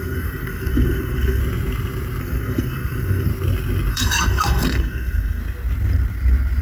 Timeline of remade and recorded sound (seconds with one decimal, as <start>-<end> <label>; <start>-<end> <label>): 0.0-1.4 remade; 1.4-2.2 recorded; 2.2-3.3 remade; 3.3-3.9 recorded; 3.9-5.4 remade; 5.4-6.6 recorded